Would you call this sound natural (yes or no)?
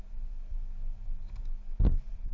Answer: yes